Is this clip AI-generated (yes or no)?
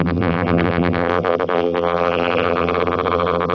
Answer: yes